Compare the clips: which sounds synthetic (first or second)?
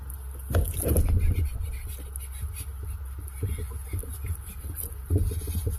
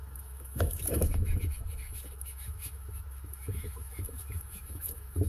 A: second